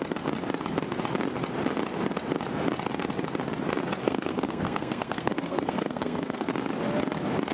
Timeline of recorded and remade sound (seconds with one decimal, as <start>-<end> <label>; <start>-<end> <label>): 0.0-4.0 recorded; 4.0-6.5 remade; 6.5-7.5 recorded